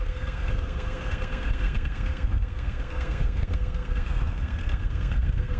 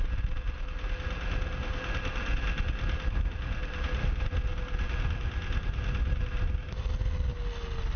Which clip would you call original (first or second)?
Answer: second